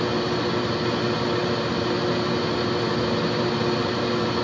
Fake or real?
real